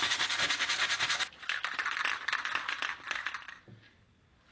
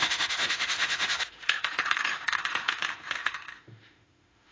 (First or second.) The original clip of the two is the first